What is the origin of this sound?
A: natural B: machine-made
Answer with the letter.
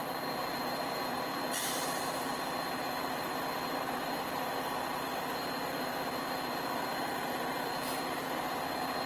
A